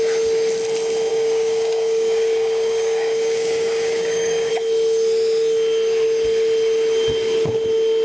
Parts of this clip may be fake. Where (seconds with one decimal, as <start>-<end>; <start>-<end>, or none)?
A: 1.1-4.5